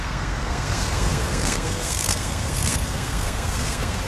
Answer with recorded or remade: remade